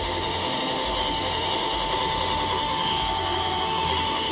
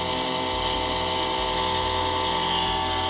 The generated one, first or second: first